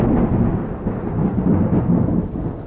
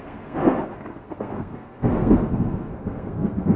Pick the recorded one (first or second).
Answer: first